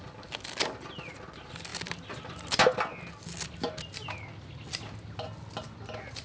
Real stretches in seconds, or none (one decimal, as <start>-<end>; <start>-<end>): 0.0-6.2